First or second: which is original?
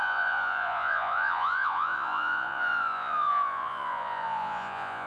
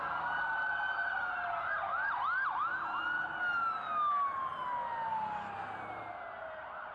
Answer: second